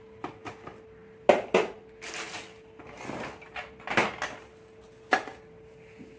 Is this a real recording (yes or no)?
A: yes